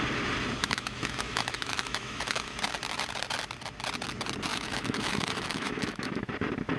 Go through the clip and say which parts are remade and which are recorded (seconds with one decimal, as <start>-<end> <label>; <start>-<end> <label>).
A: 0.0-0.6 recorded; 0.6-2.6 remade; 2.6-4.5 recorded; 4.5-6.3 remade; 6.3-6.8 recorded